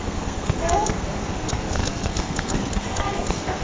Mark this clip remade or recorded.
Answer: remade